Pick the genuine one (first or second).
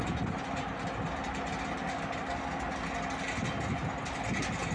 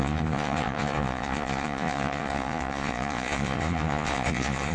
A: first